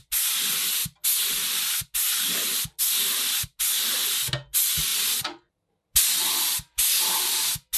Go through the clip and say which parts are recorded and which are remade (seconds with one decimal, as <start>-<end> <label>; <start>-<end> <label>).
0.0-7.8 recorded